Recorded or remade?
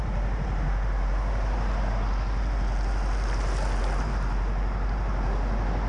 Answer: recorded